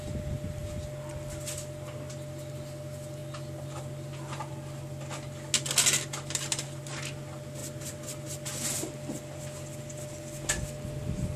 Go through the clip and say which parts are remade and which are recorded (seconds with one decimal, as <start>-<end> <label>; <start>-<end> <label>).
0.0-11.4 recorded